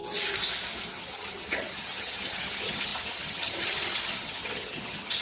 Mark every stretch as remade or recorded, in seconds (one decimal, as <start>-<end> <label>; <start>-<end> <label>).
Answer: 0.0-0.9 recorded; 0.9-5.2 remade